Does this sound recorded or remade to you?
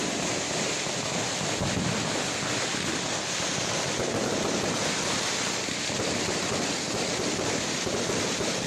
remade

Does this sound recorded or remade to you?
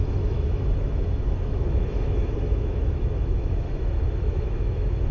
remade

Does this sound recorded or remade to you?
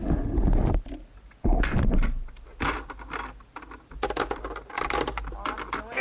recorded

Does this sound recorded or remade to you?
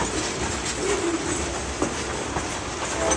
recorded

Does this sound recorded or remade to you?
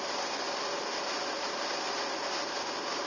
recorded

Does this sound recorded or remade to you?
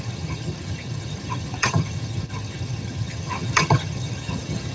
remade